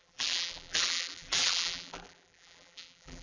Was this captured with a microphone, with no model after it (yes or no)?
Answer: no